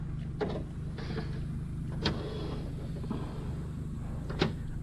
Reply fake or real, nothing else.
real